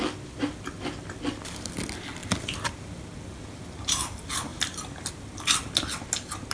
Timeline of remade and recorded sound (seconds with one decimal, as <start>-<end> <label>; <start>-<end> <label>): 0.0-4.5 recorded; 4.5-5.1 remade; 5.1-6.5 recorded